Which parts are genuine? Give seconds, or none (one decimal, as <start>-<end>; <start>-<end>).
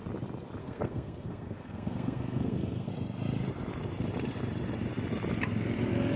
0.0-0.6; 2.9-6.2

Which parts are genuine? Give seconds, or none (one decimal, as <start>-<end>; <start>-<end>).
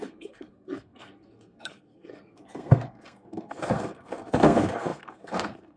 none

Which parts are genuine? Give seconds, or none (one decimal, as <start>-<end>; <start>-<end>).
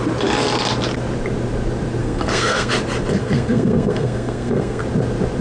0.0-2.0; 2.7-3.2; 4.8-5.4